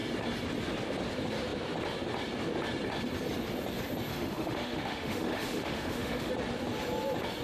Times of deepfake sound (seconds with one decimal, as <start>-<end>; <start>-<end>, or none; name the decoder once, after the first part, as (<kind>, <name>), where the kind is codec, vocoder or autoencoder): 4.1-6.3 (autoencoder, DAC-VAE)

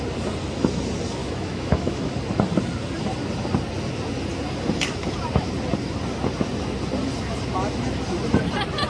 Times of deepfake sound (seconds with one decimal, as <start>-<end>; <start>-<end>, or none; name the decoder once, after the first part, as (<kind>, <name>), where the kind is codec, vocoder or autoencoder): 1.2-2.1 (autoencoder, DAC-VAE)

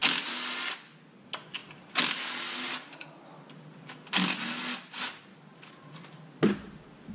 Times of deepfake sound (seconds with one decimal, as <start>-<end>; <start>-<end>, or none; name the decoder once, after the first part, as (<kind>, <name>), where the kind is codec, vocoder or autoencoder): none